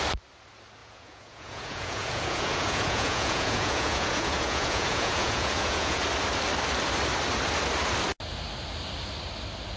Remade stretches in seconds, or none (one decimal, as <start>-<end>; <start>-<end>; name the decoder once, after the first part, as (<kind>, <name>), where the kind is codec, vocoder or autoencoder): 0.8-6.0 (vocoder, Vocos)